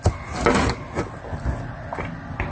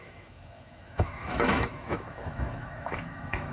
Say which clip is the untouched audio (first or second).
first